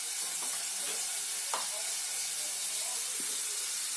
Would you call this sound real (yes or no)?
yes